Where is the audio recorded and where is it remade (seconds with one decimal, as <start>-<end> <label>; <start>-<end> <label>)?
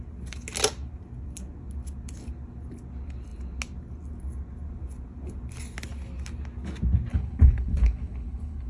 0.0-7.1 recorded; 7.1-8.7 remade